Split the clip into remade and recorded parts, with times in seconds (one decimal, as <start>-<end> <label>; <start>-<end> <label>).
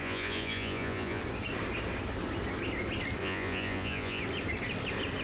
0.0-1.2 remade; 1.2-3.2 recorded; 3.2-4.2 remade; 4.2-5.2 recorded